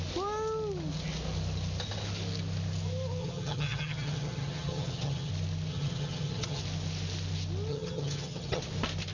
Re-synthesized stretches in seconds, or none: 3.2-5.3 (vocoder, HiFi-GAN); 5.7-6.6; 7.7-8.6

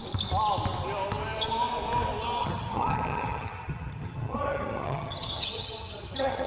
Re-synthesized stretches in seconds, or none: 2.4-6.5 (vocoder, HiFi-GAN)

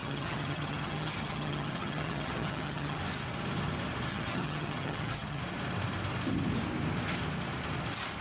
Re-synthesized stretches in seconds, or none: 0.0-3.0 (vocoder, HiFi-GAN); 4.1-5.4

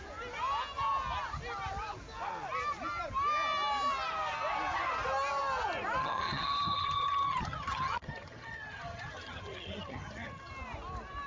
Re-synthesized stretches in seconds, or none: 6.0-10.5 (vocoder, HiFi-GAN)

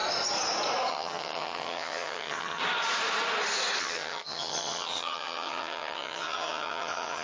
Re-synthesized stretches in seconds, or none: 0.9-2.6 (vocoder, HiFi-GAN); 3.8-7.2

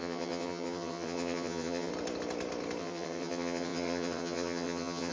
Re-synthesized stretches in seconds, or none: 0.0-1.9 (vocoder, HiFi-GAN); 2.8-5.1

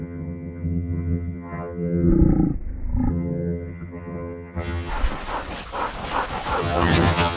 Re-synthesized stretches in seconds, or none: 0.0-2.1 (vocoder, HiFi-GAN); 3.1-4.9; 6.6-7.4